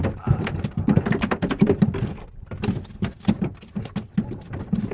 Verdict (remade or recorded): recorded